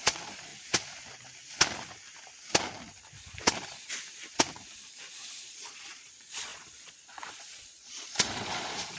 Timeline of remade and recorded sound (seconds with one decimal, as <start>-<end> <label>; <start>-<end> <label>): 0.0-0.5 remade; 0.5-5.4 recorded; 5.4-9.0 remade